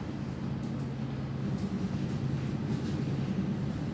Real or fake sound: real